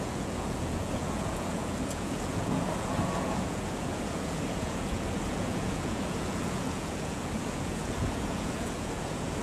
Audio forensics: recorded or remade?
remade